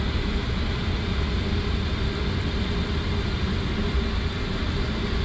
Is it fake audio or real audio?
real